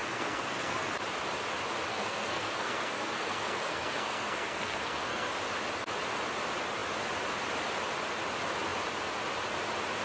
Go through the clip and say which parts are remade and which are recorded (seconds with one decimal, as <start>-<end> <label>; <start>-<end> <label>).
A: 0.0-0.8 remade; 0.8-1.9 recorded; 1.9-5.3 remade; 5.3-10.0 recorded